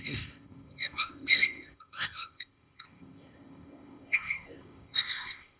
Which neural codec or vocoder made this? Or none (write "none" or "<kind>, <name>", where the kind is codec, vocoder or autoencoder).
codec, ZipCodec